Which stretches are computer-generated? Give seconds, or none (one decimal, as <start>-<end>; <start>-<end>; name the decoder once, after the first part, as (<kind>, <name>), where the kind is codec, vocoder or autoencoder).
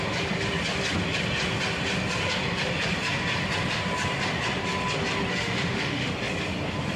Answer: 5.3-6.1 (autoencoder, DAC-VAE)